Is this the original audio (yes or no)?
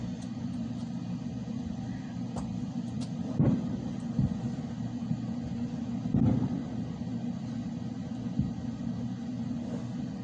yes